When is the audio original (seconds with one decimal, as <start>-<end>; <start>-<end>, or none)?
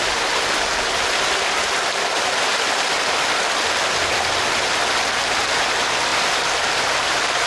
0.0-7.5